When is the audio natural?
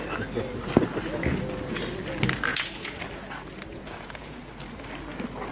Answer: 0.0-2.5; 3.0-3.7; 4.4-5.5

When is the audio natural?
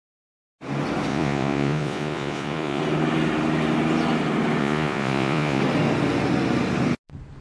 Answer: 0.0-1.1; 2.8-4.6; 5.6-7.4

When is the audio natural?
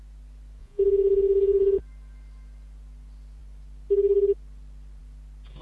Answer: 0.0-0.6; 1.8-5.6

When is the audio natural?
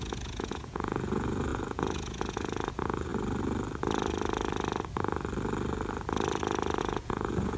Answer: 3.1-6.8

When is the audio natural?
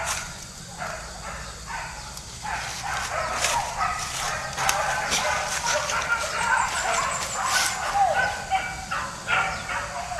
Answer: 0.8-10.2